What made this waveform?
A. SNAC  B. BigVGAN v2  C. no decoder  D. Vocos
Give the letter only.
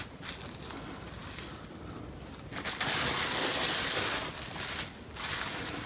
C